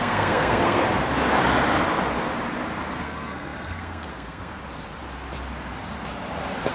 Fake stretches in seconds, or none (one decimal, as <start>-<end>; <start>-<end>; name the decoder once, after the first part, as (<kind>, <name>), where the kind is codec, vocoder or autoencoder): 0.0-0.8 (codec, SNAC); 3.0-4.6